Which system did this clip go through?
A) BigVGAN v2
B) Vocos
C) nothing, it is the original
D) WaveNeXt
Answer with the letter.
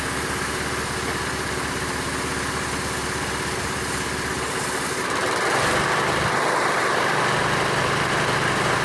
C